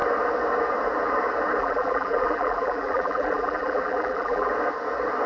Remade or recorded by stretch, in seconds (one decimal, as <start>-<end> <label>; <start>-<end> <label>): 0.0-1.6 recorded; 1.6-4.5 remade; 4.5-5.3 recorded